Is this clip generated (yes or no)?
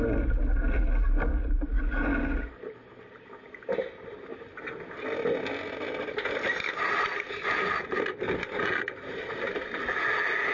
no